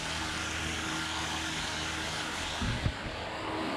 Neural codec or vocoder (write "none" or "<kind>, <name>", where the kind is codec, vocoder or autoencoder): codec, DAC